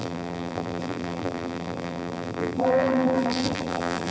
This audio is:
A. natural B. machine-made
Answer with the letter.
B